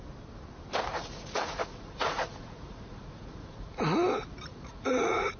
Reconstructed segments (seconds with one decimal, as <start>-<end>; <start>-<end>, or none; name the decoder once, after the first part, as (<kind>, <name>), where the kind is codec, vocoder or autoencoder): 0.9-3.8 (vocoder, Vocos); 4.5-5.4